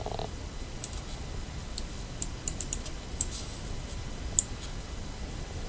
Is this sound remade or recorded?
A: recorded